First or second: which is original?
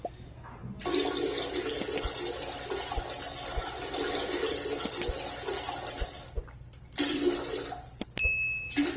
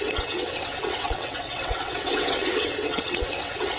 first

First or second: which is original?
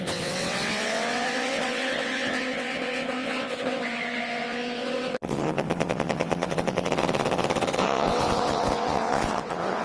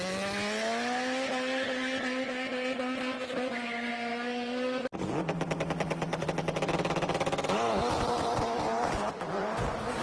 second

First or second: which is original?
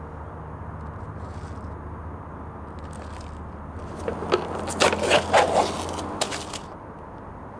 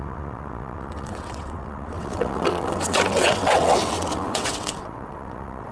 first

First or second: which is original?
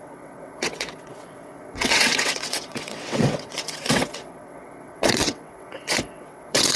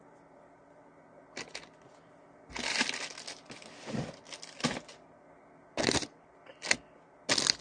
second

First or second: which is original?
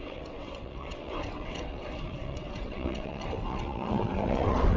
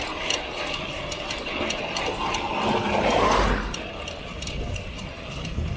second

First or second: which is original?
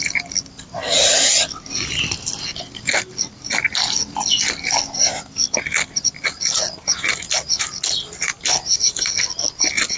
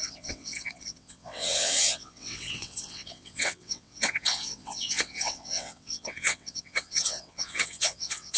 first